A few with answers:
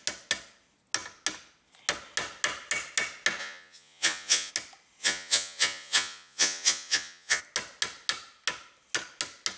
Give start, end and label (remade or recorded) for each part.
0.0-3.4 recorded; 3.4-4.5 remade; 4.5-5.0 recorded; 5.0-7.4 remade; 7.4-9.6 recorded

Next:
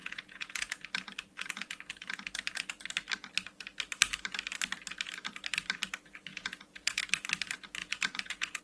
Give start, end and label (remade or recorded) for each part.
0.0-0.7 remade; 0.7-6.3 recorded; 6.3-7.0 remade; 7.0-7.8 recorded; 7.8-8.6 remade

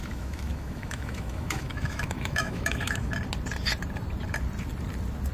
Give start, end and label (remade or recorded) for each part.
0.0-3.1 remade; 3.1-5.3 recorded

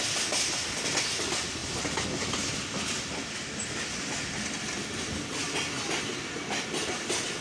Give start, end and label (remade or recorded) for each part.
0.0-7.4 recorded

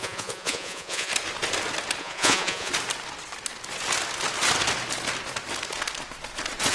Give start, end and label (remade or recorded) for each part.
0.0-1.1 remade; 1.1-2.0 recorded; 2.0-2.7 remade; 2.7-6.7 recorded